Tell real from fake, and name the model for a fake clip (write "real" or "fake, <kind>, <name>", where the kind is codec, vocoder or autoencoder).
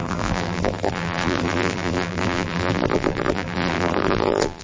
fake, vocoder, BigVGAN v2